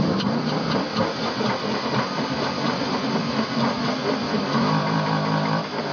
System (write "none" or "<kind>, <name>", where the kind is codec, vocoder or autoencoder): vocoder, BigVGAN v2